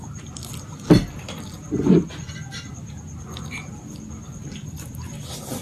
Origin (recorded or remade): recorded